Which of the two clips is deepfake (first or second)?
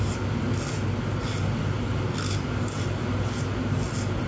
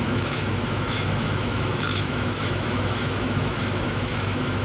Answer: second